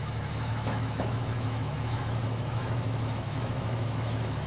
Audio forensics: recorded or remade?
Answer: remade